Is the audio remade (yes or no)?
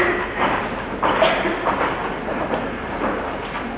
no